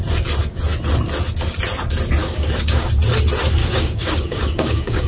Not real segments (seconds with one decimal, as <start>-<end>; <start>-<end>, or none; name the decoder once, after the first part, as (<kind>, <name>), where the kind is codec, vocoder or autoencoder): 2.2-2.9 (codec, DAC); 3.6-5.1